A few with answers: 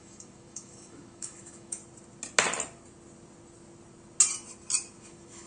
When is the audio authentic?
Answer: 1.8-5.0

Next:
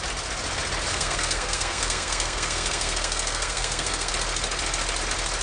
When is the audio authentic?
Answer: 0.0-0.9; 4.1-5.4